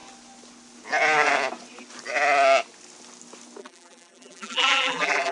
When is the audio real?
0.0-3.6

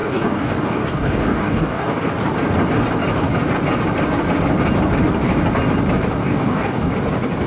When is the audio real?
2.0-6.2; 6.9-7.5